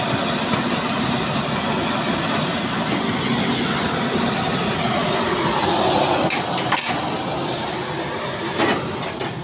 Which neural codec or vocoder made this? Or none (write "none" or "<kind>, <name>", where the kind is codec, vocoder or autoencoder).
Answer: none